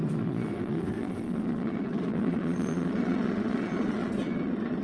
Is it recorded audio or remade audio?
remade